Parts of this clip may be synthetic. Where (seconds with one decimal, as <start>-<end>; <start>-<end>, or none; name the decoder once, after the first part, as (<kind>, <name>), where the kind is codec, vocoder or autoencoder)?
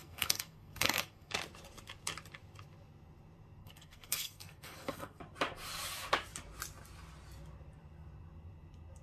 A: 0.0-1.3 (codec, SNAC); 3.6-5.2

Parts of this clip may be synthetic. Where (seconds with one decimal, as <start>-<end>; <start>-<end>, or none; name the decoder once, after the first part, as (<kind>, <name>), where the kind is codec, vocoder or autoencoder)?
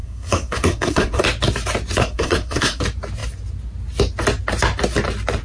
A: 0.0-1.2 (codec, SNAC); 2.0-2.8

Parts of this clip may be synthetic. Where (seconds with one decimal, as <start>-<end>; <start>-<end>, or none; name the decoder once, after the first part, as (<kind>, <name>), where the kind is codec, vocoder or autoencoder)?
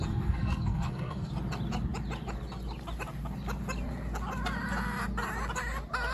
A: 0.0-1.3 (codec, SNAC)